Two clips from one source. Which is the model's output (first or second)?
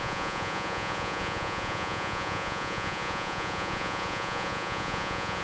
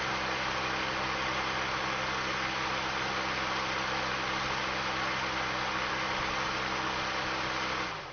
first